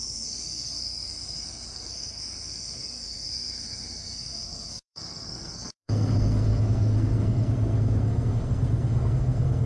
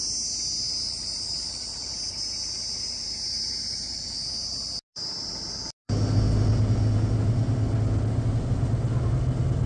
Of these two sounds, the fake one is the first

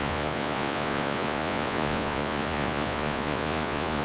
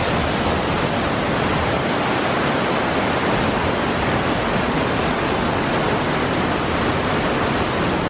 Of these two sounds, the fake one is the first